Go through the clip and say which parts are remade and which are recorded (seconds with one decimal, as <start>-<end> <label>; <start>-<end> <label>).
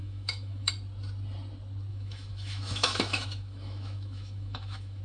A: 0.0-0.7 remade; 0.7-1.9 recorded; 1.9-5.0 remade